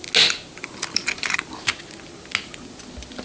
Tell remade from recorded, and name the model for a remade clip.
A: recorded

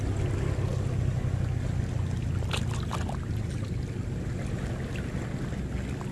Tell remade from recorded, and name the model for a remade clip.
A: recorded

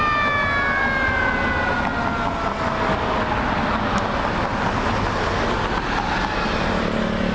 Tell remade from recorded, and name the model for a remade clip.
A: recorded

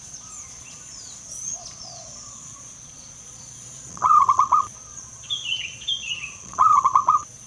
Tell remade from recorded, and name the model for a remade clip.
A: remade, vocoder, Vocos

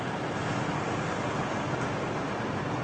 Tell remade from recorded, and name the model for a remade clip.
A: recorded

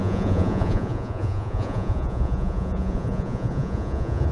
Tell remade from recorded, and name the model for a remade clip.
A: remade, vocoder, Vocos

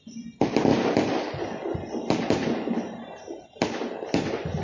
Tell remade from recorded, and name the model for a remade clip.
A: recorded